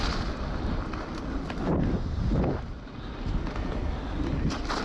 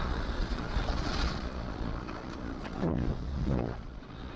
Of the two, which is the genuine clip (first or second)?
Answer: first